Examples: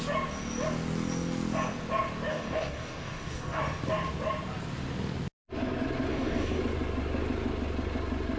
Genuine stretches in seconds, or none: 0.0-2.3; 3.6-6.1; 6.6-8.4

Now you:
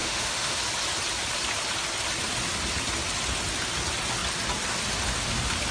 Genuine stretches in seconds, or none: 0.6-5.7

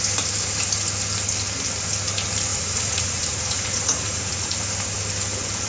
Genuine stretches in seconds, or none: 0.0-2.5; 4.5-5.7

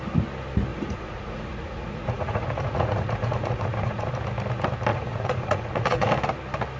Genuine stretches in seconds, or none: 0.0-0.7; 4.1-4.9; 6.1-6.8